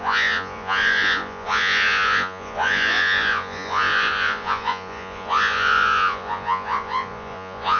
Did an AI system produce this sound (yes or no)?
yes